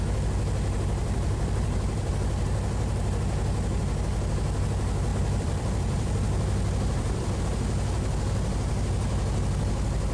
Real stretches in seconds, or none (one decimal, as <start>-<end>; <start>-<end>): 0.0-1.0; 2.1-5.1; 7.4-10.1